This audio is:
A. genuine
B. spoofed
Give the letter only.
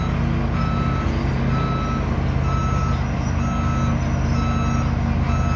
A